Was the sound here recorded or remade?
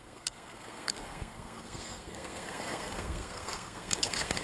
remade